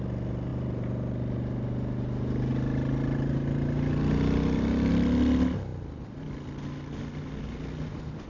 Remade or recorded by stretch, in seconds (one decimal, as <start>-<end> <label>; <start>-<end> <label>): 0.0-8.3 recorded